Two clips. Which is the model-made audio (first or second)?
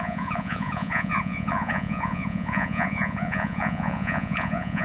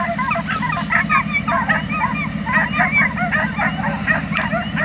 first